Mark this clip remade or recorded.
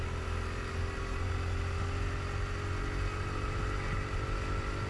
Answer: recorded